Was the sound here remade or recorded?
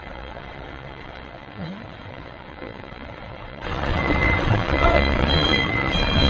remade